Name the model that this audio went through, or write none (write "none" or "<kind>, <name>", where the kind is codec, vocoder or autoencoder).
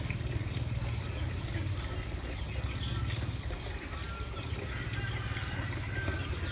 none